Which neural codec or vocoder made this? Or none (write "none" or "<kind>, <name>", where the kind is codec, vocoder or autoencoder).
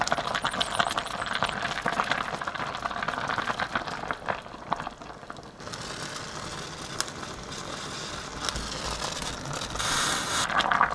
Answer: none